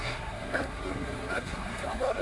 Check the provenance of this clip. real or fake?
fake